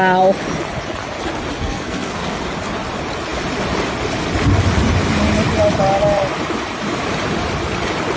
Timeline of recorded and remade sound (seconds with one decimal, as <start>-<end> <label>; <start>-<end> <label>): 0.0-1.6 recorded; 1.6-2.4 remade; 2.4-8.2 recorded